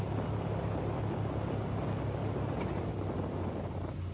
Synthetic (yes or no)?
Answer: no